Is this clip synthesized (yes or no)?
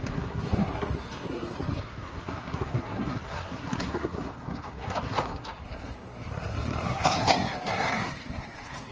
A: yes